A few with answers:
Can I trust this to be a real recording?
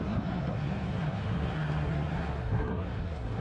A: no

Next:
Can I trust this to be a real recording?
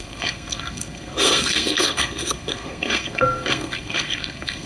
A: no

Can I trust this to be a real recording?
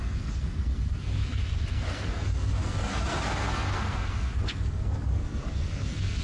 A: no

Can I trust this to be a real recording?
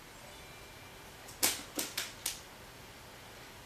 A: yes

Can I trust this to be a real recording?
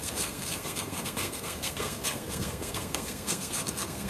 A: no